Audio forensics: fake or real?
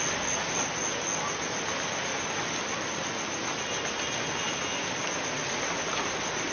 real